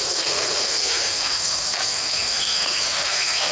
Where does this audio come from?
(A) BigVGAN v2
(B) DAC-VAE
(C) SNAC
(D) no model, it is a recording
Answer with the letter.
C